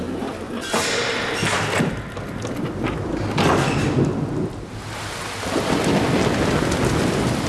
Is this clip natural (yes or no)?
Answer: yes